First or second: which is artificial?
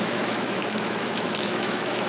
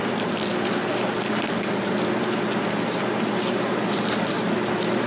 first